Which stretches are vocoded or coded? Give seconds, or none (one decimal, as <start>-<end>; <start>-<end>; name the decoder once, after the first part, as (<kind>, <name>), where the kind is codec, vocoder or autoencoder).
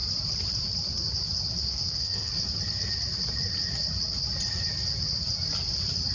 1.7-2.3 (codec, SNAC)